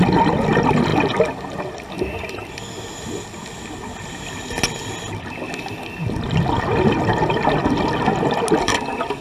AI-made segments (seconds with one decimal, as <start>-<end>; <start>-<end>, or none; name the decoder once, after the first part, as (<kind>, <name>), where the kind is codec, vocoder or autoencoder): none